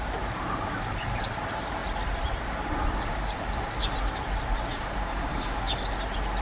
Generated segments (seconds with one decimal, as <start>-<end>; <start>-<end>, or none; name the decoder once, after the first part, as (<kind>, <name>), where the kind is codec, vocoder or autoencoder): 4.7-5.7 (codec, DAC)